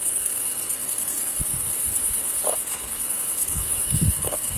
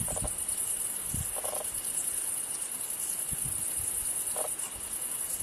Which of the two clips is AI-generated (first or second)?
first